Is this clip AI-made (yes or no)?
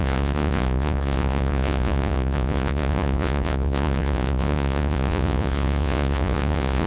yes